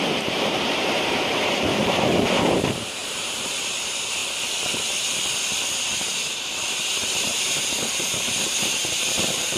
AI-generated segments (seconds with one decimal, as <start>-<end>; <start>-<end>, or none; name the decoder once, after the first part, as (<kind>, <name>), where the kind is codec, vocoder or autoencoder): 0.0-4.2 (vocoder, BigVGAN v2); 7.2-9.6